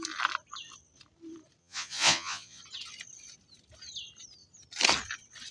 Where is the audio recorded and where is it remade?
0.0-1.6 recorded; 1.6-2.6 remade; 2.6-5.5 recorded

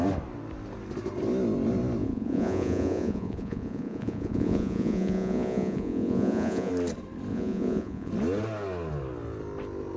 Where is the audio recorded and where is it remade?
0.0-2.0 recorded; 2.0-6.7 remade; 6.7-7.3 recorded; 7.3-8.1 remade; 8.1-10.0 recorded

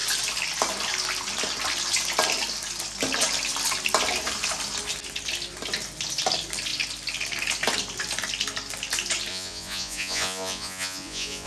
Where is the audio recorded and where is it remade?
0.0-9.3 recorded; 9.3-11.5 remade

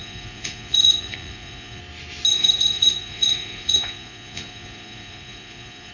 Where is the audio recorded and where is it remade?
0.0-1.8 remade; 1.8-2.3 recorded; 2.3-5.9 remade